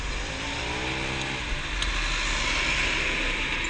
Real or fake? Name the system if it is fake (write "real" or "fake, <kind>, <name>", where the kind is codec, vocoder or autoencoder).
real